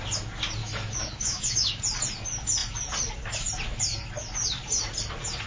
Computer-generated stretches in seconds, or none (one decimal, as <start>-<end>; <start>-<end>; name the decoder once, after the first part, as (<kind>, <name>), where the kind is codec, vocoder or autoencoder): 0.6-1.8 (autoencoder, DAC-VAE)

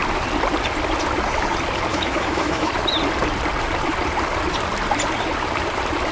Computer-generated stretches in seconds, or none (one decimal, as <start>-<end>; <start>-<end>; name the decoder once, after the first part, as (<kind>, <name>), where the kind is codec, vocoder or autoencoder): 1.9-2.7 (autoencoder, DAC-VAE)

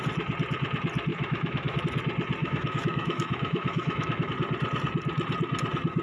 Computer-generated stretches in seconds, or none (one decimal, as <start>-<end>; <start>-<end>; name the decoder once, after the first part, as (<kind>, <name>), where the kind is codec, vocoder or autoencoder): 1.1-1.8 (autoencoder, DAC-VAE); 2.4-4.3

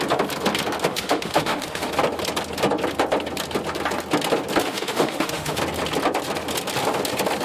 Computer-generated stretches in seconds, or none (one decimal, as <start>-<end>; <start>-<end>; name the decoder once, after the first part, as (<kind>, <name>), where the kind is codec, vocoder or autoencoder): 0.9-1.9 (autoencoder, DAC-VAE); 4.6-5.6

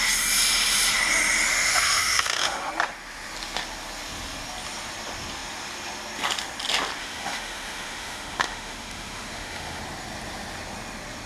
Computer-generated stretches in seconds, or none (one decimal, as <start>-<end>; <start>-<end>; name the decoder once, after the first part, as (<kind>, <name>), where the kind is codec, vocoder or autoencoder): 1.5-2.7 (autoencoder, DAC-VAE); 7.0-9.8

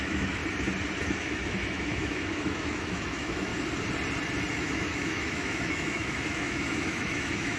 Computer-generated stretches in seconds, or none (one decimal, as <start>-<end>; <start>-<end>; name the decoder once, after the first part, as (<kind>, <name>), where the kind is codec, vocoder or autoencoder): 0.0-0.4 (autoencoder, DAC-VAE); 1.0-3.5; 4.5-7.6

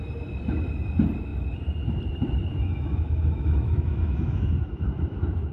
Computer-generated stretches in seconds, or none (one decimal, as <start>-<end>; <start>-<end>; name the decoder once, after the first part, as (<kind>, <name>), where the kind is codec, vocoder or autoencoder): 2.5-5.5 (autoencoder, DAC-VAE)